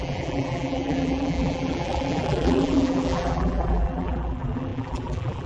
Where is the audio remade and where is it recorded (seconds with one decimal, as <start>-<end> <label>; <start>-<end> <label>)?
0.0-5.5 remade